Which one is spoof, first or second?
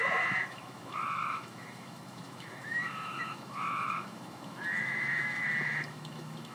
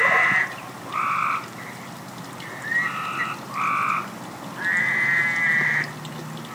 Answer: first